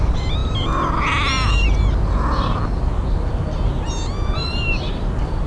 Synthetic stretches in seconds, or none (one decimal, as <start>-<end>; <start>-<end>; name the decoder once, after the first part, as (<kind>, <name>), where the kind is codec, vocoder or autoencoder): none